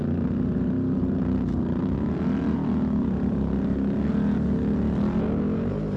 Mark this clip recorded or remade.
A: recorded